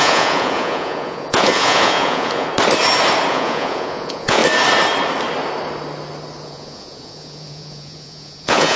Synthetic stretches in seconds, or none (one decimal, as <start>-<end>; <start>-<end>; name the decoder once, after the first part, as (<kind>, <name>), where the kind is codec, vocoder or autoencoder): 0.0-2.5 (vocoder, Vocos); 3.3-4.4; 6.4-8.8